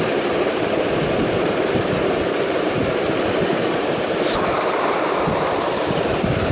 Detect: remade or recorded remade